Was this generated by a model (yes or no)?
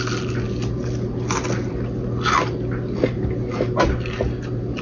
no